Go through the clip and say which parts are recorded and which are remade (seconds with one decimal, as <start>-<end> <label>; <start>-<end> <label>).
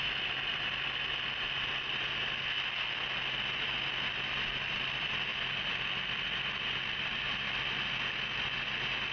0.0-9.1 recorded